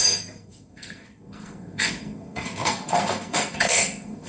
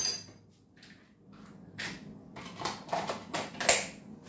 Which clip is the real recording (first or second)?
second